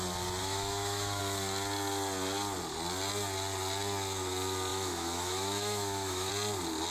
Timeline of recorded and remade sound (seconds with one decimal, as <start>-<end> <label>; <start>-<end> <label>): 0.0-0.4 recorded; 0.4-1.2 remade; 1.2-4.7 recorded; 4.7-6.3 remade; 6.3-6.9 recorded